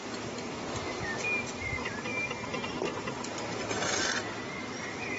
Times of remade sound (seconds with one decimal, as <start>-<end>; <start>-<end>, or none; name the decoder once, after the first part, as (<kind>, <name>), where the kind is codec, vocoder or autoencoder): none